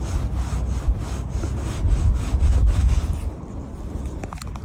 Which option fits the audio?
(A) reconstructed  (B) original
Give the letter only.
B